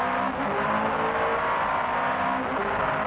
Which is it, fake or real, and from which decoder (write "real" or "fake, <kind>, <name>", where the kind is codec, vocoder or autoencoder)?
real